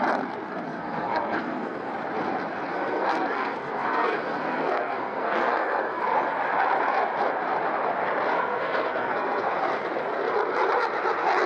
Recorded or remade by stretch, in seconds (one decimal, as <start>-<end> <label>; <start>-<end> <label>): 0.0-0.7 recorded; 0.7-1.9 remade; 1.9-2.7 recorded; 2.7-6.0 remade; 6.0-8.3 recorded; 8.3-9.6 remade; 9.6-11.5 recorded